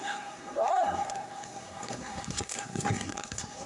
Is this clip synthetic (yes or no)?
yes